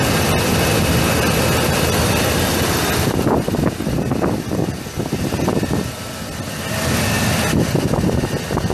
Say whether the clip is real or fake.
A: real